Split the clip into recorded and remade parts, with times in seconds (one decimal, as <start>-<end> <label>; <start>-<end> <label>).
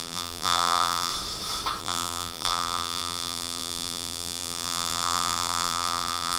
0.0-1.1 remade; 1.1-1.8 recorded; 1.8-6.4 remade